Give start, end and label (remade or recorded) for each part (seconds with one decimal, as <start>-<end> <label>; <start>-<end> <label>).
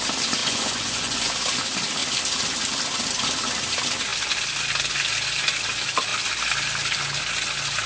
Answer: 0.0-0.4 recorded; 0.4-1.3 remade; 1.3-7.9 recorded